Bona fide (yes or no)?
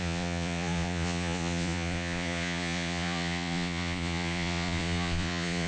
no